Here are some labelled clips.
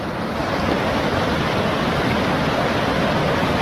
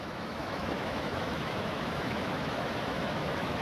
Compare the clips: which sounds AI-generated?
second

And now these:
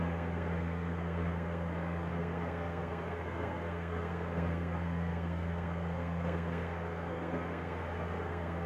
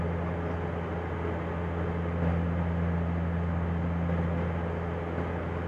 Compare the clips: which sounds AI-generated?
first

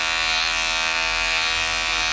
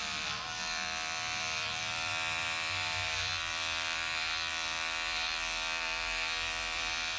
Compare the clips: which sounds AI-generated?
second